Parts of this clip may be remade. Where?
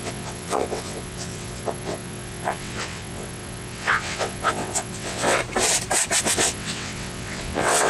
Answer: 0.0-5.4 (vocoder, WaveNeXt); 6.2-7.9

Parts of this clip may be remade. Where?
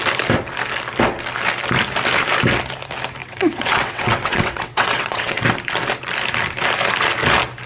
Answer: 3.2-5.4 (vocoder, WaveNeXt)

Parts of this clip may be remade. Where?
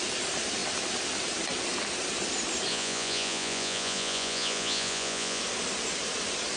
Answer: 2.7-5.4 (vocoder, Vocos)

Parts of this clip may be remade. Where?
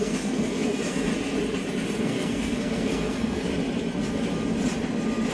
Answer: 0.0-1.1 (codec, SNAC); 2.0-3.5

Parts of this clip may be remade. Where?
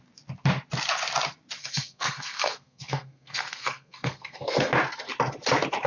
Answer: 1.6-4.7 (codec, SNAC)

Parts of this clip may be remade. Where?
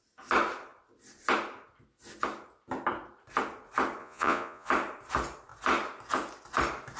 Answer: 4.0-4.7 (vocoder, Vocos)